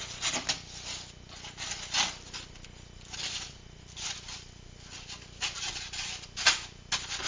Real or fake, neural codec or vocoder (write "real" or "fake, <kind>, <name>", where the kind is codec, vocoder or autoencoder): real